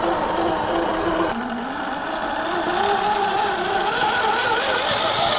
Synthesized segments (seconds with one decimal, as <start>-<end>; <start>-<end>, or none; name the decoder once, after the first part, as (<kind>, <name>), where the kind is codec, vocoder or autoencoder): none